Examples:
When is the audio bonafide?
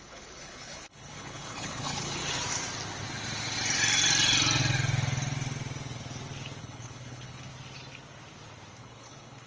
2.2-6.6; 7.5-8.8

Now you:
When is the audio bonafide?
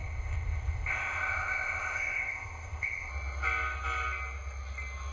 3.1-5.1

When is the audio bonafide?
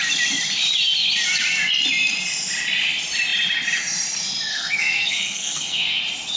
0.0-4.5; 6.0-6.4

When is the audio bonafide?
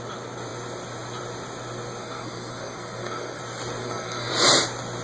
0.0-2.0; 3.4-3.8; 4.3-5.0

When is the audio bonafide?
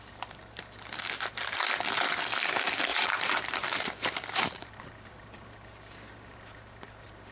0.0-2.9; 5.1-7.3